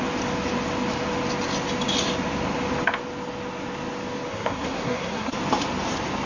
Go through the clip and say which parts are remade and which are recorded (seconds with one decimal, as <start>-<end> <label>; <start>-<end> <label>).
0.0-4.3 recorded; 4.3-5.3 remade; 5.3-6.3 recorded